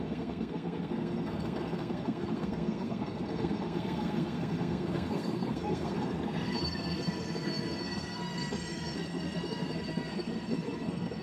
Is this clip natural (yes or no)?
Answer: no